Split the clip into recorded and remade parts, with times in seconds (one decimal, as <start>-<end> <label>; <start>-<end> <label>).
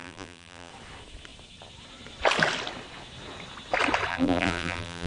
0.0-0.7 remade; 0.7-4.1 recorded; 4.1-5.1 remade